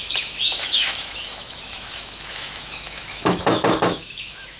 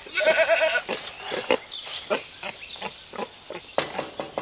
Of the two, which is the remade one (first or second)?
first